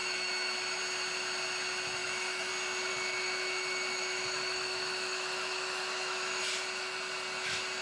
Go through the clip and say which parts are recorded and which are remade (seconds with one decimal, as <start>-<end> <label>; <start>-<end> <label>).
0.0-0.8 remade; 0.8-2.0 recorded; 2.0-2.5 remade; 2.5-2.9 recorded; 2.9-6.4 remade; 6.4-7.8 recorded

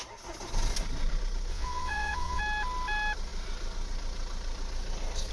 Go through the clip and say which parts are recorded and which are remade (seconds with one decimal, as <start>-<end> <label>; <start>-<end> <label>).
0.0-1.5 recorded; 1.5-2.4 remade; 2.4-5.3 recorded

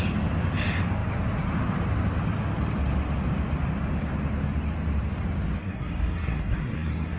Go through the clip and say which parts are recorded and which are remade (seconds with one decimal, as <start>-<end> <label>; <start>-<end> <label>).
0.0-5.6 recorded; 5.6-7.2 remade